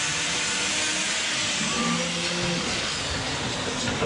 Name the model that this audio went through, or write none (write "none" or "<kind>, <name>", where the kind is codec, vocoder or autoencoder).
none